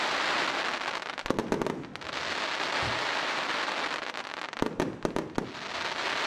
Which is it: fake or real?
real